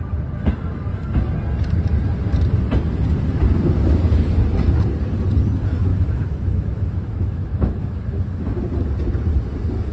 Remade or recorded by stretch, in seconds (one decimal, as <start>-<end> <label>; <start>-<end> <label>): 0.0-5.9 recorded; 5.9-8.6 remade; 8.6-9.9 recorded